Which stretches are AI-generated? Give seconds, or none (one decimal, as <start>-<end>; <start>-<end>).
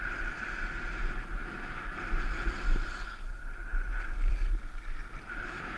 none